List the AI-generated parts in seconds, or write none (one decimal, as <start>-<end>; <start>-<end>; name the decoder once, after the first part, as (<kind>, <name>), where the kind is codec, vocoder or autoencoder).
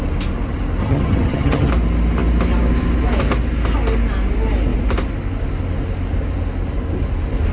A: 0.8-1.7 (vocoder, HiFi-GAN)